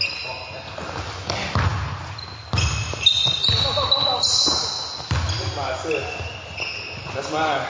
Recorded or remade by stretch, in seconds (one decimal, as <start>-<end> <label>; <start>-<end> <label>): 0.0-7.7 recorded